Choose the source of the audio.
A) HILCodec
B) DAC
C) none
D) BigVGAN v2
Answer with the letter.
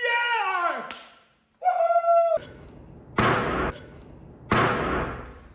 C